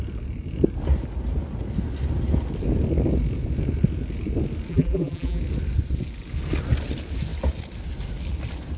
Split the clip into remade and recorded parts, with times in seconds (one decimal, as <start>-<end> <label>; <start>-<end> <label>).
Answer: 0.0-4.7 recorded; 4.7-5.4 remade; 5.4-8.8 recorded